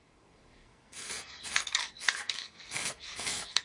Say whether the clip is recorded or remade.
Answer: remade